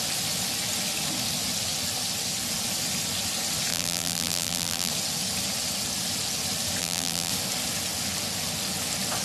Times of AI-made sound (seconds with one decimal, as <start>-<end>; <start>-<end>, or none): 3.7-4.9; 6.8-7.3